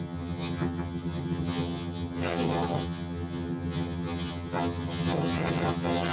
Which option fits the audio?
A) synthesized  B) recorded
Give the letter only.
A